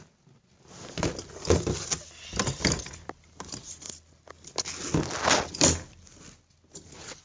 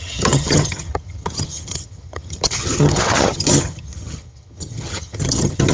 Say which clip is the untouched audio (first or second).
first